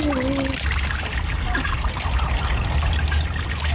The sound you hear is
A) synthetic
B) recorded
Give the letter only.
B